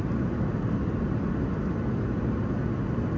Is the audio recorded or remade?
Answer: recorded